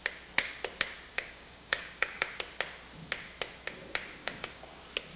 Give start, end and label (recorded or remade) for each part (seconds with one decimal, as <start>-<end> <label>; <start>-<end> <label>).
0.0-1.1 recorded; 1.1-2.3 remade; 2.3-4.2 recorded; 4.2-4.8 remade; 4.8-5.2 recorded